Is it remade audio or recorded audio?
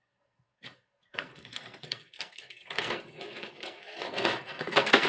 remade